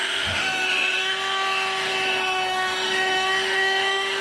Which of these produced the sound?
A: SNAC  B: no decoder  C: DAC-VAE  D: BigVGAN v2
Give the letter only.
C